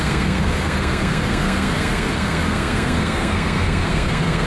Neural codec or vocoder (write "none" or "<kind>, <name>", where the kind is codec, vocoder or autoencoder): codec, SNAC